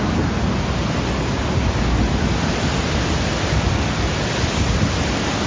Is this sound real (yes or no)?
yes